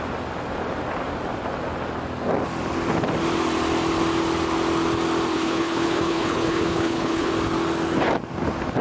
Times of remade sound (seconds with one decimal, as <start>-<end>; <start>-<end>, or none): 5.3-7.3